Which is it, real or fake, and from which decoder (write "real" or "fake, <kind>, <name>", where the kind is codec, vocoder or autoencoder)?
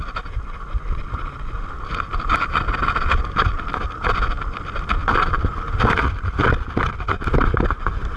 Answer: real